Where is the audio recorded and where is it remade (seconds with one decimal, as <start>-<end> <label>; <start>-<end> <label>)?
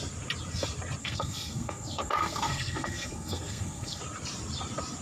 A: 0.0-1.0 recorded; 1.0-4.0 remade; 4.0-5.0 recorded